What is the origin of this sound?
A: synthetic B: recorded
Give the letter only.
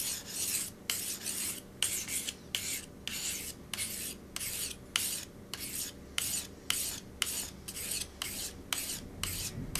B